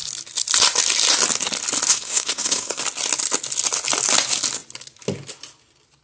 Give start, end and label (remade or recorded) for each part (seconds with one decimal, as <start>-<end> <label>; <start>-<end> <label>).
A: 0.0-1.9 recorded; 1.9-2.8 remade; 2.8-6.0 recorded